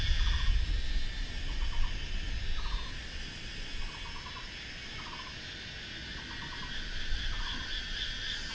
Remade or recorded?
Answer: recorded